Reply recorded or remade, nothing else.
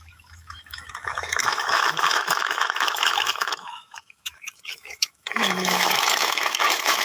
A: remade